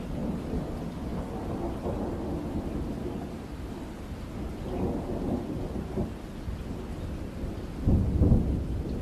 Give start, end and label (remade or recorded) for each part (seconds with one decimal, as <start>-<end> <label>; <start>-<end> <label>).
0.0-9.0 recorded